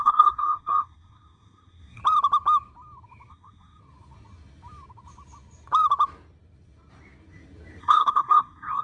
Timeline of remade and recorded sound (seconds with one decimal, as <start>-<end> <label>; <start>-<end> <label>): 0.0-2.0 remade; 2.0-3.3 recorded; 3.3-3.8 remade; 3.8-7.8 recorded; 7.8-8.8 remade

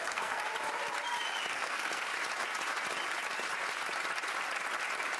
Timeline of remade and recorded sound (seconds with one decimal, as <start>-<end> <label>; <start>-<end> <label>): 0.0-0.5 remade; 0.5-1.5 recorded; 1.5-2.1 remade; 2.1-5.2 recorded

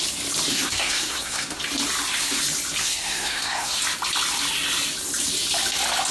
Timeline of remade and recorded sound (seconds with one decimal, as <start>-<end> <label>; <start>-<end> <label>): 0.0-0.5 recorded; 0.5-1.6 remade; 1.6-2.8 recorded; 2.8-3.8 remade; 3.8-6.1 recorded

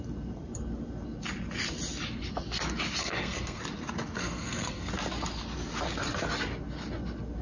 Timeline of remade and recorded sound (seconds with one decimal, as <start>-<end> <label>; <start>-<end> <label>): 0.0-3.0 recorded; 3.0-3.6 remade; 3.6-4.2 recorded; 4.2-4.9 remade; 4.9-7.4 recorded

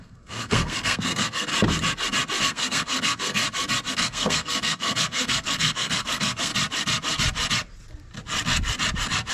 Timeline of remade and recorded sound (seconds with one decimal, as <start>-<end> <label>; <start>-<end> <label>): 0.0-1.5 remade; 1.5-2.4 recorded; 2.4-3.4 remade; 3.4-3.9 recorded; 3.9-6.5 remade; 6.5-9.3 recorded

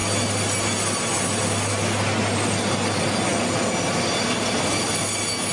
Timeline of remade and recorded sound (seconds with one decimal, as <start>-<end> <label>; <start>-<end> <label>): 0.0-5.5 recorded